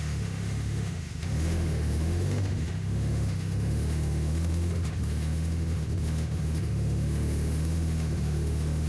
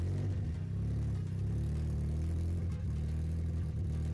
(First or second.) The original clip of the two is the second